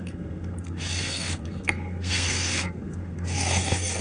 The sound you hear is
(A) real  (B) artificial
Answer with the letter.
B